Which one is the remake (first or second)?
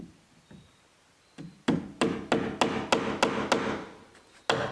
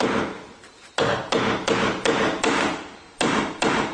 second